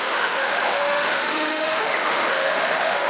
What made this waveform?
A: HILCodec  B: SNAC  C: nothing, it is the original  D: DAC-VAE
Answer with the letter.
D